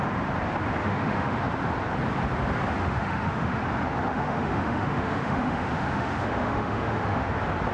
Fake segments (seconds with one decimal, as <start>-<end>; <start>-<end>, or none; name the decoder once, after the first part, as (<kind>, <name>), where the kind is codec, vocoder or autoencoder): 0.8-1.4 (autoencoder, DAC-VAE); 2.8-3.6; 4.1-7.3

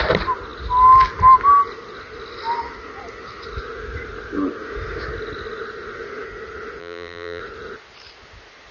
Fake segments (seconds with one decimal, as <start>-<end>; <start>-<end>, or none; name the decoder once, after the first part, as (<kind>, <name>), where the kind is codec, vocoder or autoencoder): 6.8-7.4 (vocoder, BigVGAN v2)